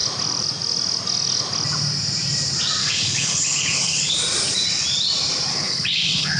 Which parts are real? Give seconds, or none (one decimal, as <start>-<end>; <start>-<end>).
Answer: 0.0-2.8; 4.2-5.5